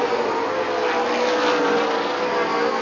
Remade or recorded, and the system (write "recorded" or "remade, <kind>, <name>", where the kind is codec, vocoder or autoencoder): recorded